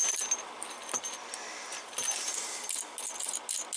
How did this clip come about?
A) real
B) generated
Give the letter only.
A